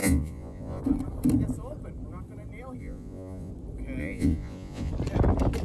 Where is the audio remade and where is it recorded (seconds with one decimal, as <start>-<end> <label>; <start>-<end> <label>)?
0.0-0.8 remade; 0.8-2.8 recorded; 2.8-3.5 remade; 3.5-4.0 recorded; 4.0-4.9 remade; 4.9-5.6 recorded